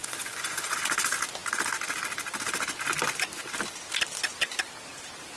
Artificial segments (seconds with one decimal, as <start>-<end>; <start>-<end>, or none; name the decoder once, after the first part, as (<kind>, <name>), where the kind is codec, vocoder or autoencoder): 0.0-1.0 (vocoder, Vocos)